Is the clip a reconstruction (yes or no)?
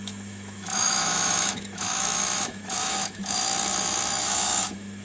yes